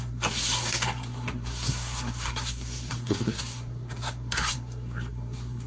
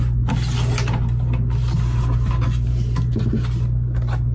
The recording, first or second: second